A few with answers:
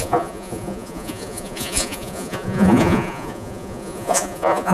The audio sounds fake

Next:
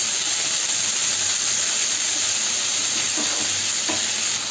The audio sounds real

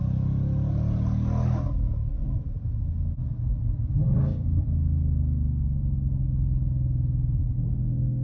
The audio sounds real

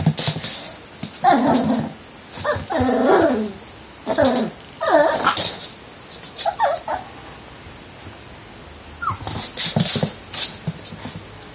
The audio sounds real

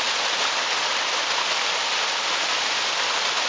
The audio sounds real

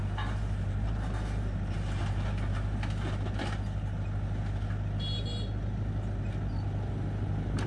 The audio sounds real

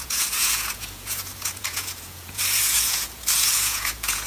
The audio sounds fake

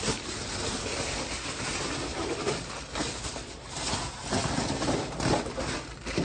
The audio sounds real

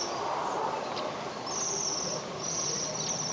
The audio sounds real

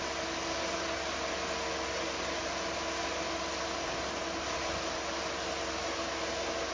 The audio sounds real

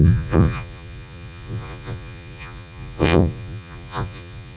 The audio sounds fake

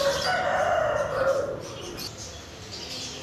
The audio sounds real